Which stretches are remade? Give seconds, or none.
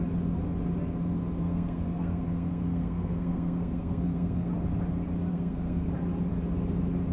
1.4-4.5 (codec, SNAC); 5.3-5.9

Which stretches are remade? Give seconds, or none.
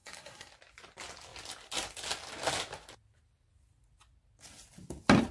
0.0-0.5 (codec, SNAC)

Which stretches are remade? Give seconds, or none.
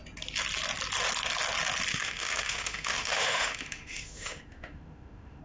1.9-5.4 (autoencoder, DAC-VAE)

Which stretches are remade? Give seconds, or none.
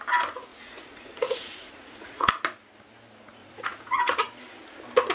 0.5-2.3 (vocoder, Vocos); 3.4-4.1